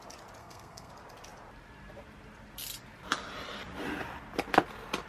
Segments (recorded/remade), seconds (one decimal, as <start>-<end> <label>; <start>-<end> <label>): 0.0-0.4 recorded; 0.4-0.9 remade; 0.9-5.1 recorded